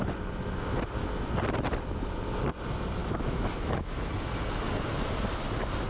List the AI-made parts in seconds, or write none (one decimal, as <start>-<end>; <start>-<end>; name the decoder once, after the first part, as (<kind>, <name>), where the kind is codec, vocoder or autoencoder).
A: 3.0-4.1 (autoencoder, DAC-VAE)